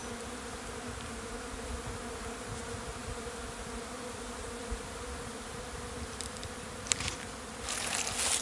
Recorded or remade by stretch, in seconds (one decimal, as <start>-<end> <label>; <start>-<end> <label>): 0.0-3.0 recorded; 3.0-8.0 remade; 8.0-8.4 recorded